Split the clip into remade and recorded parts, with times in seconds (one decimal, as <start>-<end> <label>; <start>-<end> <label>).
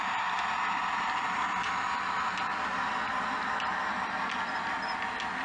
0.0-5.4 recorded